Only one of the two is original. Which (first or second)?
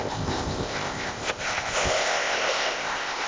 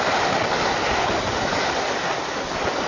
second